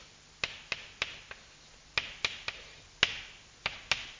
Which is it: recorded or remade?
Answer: recorded